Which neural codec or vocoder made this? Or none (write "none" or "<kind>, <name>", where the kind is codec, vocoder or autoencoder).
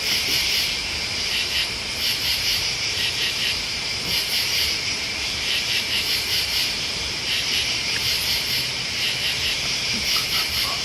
vocoder, BigVGAN v2